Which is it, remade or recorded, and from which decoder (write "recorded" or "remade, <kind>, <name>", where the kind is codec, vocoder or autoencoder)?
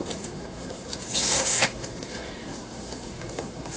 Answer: remade, codec, SNAC